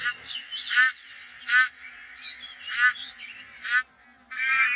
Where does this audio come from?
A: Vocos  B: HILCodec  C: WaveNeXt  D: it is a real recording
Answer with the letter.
D